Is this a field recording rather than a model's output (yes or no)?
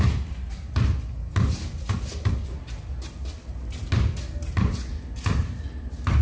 yes